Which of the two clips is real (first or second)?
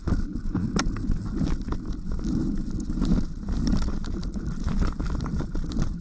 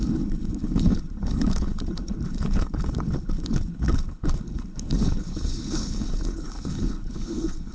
first